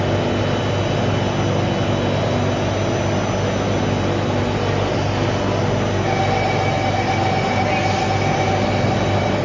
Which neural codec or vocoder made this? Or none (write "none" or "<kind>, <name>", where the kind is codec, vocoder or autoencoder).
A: none